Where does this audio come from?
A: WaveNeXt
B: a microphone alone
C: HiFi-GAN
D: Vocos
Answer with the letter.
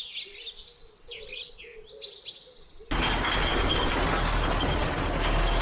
B